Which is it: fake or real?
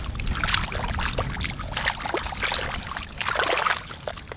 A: real